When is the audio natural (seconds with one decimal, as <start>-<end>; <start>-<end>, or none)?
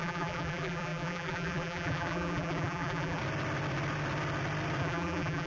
3.2-4.8